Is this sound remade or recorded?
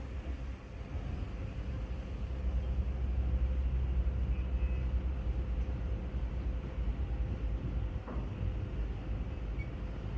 recorded